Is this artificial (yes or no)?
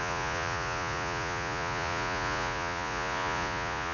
yes